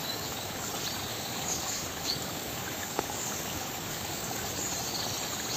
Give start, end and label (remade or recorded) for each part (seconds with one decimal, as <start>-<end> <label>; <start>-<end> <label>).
0.0-0.7 remade; 0.7-1.1 recorded; 1.1-4.5 remade; 4.5-5.6 recorded